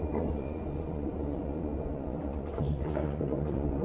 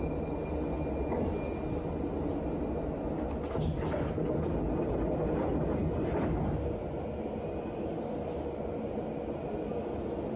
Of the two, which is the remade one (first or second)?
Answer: first